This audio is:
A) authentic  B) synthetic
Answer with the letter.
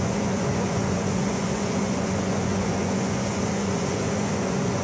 B